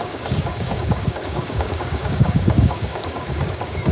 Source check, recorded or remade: remade